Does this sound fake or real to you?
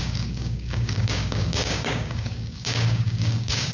fake